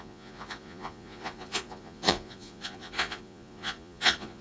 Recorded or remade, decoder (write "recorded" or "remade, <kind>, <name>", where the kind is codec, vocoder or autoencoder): remade, vocoder, Vocos